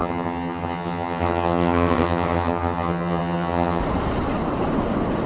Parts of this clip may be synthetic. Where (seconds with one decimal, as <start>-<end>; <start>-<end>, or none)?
0.0-3.8